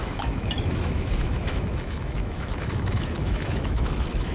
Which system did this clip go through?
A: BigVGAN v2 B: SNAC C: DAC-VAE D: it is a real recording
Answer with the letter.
C